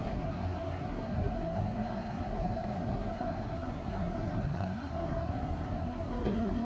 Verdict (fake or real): fake